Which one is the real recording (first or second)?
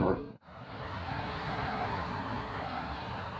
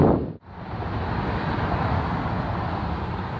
second